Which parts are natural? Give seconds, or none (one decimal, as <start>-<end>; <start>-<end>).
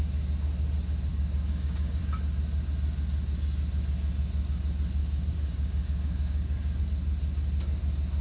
0.0-1.1; 2.0-5.0; 6.8-8.2